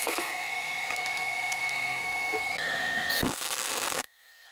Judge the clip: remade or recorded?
remade